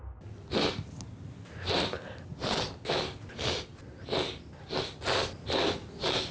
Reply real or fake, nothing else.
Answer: real